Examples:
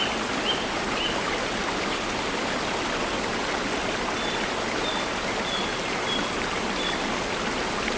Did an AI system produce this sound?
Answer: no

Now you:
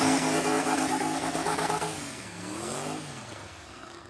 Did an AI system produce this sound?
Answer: yes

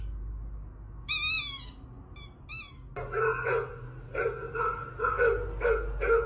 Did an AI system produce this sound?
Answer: no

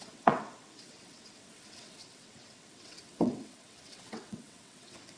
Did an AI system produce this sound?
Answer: yes